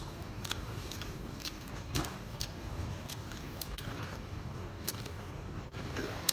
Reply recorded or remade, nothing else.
remade